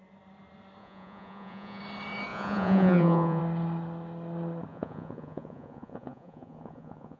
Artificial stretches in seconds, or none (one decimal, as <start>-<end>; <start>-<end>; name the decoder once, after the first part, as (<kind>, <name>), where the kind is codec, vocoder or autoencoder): 0.8-1.8 (vocoder, Vocos); 2.3-3.4; 4.7-7.2

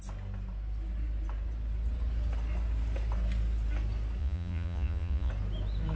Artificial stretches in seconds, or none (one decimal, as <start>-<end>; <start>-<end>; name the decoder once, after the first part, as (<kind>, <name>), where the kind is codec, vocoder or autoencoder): 4.2-5.3 (vocoder, Vocos)

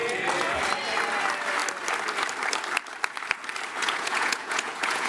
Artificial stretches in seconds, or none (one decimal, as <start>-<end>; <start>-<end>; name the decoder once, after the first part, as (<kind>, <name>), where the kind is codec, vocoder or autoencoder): 3.8-5.1 (vocoder, Vocos)